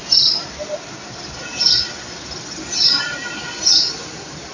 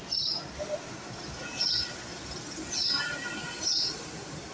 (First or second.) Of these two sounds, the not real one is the first